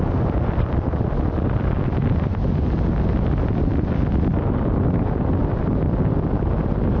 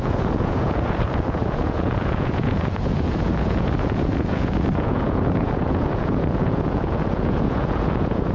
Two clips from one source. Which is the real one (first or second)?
first